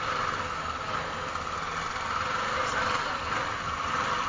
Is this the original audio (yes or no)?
yes